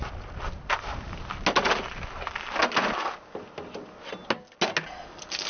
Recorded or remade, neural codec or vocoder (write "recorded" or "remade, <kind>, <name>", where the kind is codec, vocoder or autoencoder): recorded